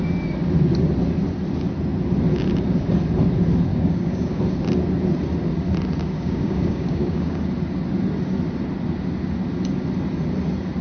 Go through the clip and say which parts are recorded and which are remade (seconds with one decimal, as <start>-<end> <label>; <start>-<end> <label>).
0.0-3.7 recorded; 3.7-4.4 remade; 4.4-6.0 recorded; 6.0-7.4 remade; 7.4-10.8 recorded